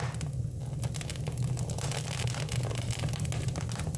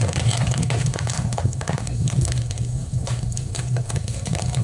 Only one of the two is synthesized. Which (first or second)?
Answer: second